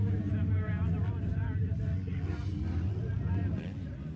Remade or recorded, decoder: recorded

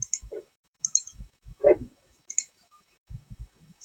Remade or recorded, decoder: remade, autoencoder, DAC-VAE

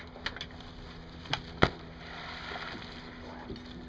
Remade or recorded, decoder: recorded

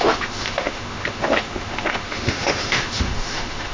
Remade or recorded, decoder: remade, autoencoder, DAC-VAE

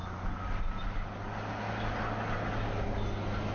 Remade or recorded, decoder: recorded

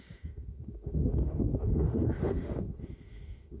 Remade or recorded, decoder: remade, autoencoder, DAC-VAE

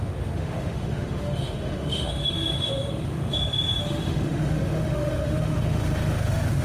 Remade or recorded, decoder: remade, autoencoder, DAC-VAE